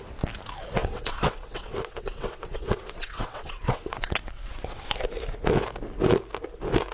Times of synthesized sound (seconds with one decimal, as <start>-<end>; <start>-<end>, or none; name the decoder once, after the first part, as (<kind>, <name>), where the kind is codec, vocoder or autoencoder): 0.8-4.9 (vocoder, WaveNeXt)